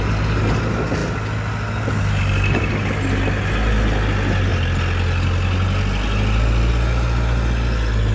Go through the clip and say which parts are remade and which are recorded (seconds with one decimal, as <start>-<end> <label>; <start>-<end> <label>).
0.0-8.1 recorded